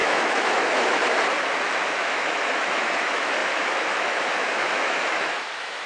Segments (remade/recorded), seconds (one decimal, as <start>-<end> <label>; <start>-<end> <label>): 0.0-1.0 remade; 1.0-1.6 recorded; 1.6-5.9 remade